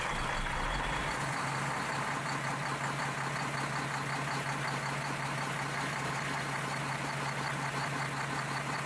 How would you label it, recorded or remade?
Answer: recorded